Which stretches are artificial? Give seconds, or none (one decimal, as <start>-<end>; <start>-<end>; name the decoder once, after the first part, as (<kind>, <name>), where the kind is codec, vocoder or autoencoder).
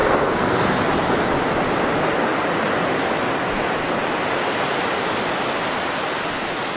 0.0-0.7 (codec, SNAC)